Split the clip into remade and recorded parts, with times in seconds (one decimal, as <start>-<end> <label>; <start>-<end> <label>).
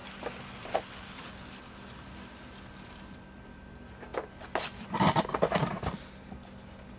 0.0-7.0 recorded